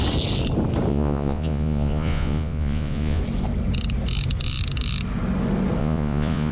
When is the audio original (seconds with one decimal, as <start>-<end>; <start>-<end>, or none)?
0.0-0.9; 3.2-5.8